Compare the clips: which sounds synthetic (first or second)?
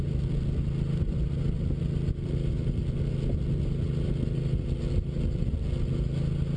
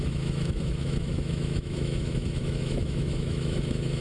second